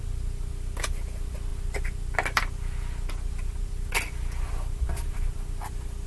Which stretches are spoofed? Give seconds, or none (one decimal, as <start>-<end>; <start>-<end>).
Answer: none